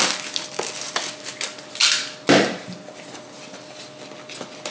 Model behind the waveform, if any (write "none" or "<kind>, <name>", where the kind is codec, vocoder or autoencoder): none